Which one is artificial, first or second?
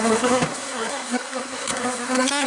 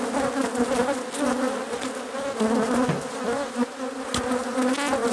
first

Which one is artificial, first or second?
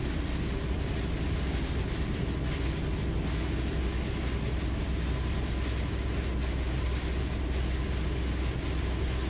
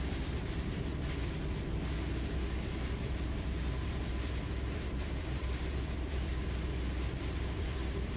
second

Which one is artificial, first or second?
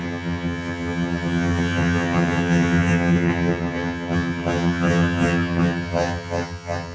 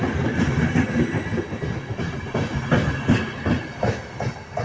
first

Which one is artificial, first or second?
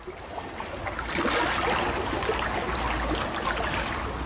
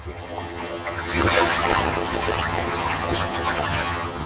second